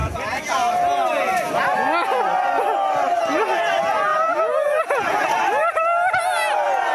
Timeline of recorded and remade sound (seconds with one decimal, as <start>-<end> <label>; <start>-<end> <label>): 0.0-4.1 recorded; 4.1-5.3 remade; 5.3-6.9 recorded